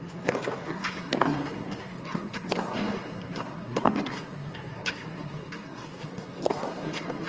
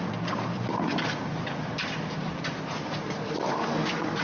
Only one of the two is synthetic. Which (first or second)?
first